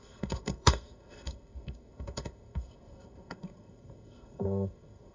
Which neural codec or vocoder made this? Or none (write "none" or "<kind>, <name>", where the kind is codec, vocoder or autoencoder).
codec, SNAC